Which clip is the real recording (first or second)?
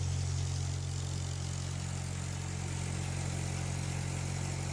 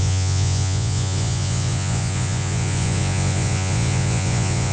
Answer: first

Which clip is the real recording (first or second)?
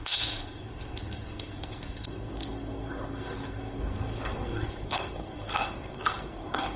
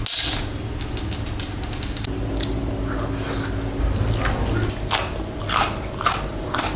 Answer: second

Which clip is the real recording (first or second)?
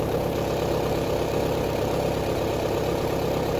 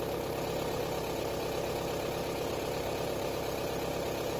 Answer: second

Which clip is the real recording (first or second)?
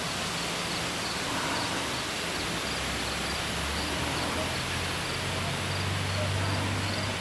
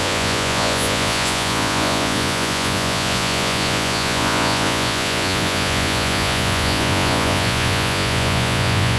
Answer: first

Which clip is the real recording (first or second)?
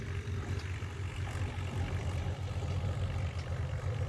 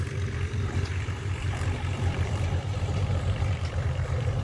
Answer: first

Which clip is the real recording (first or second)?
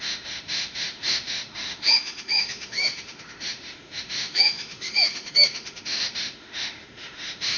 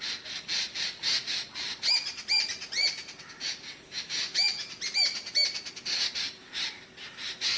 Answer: second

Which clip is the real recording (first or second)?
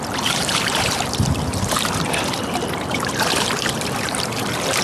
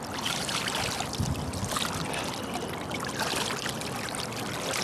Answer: second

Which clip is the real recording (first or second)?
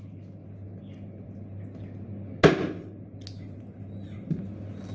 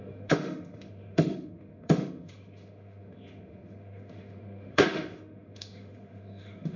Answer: first